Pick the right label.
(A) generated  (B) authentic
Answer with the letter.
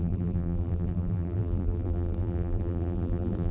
A